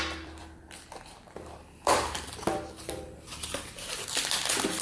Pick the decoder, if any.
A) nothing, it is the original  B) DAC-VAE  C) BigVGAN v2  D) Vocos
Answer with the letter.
C